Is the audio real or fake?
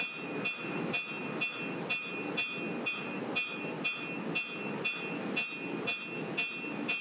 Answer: real